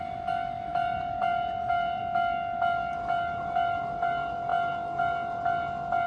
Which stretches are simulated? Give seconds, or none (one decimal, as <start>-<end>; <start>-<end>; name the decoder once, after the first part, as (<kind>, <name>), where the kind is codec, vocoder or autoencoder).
0.7-2.0 (vocoder, BigVGAN v2)